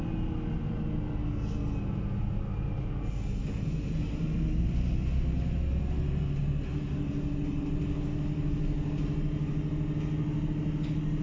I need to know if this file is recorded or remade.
recorded